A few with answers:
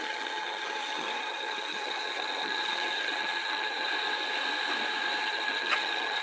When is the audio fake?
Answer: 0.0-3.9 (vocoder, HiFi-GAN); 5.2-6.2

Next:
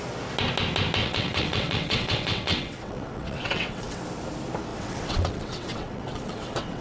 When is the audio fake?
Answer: 1.0-4.0 (vocoder, WaveNeXt); 4.7-6.8

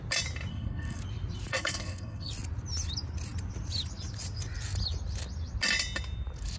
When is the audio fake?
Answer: 0.5-1.0 (codec, SNAC); 1.5-2.3

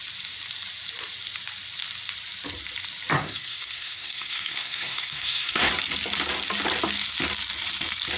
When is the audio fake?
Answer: 3.1-5.7 (codec, SNAC)

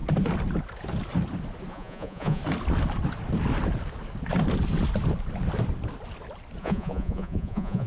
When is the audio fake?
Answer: 1.7-2.4 (vocoder, Vocos); 6.6-7.9

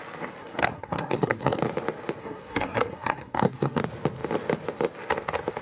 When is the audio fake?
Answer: 0.4-1.6 (codec, SNAC); 2.2-3.8

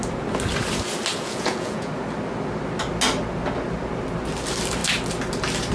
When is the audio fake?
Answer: 1.1-1.9 (vocoder, Vocos)

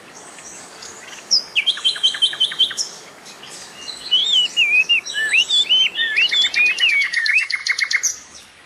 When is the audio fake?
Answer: 0.0-4.2 (codec, DAC); 4.8-5.4; 6.8-7.6; 8.1-8.7